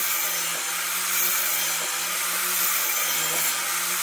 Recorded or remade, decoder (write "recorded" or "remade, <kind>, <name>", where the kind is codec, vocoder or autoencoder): recorded